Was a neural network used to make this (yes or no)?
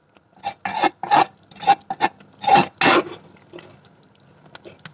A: no